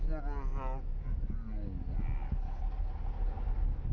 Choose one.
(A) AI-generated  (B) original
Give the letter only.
B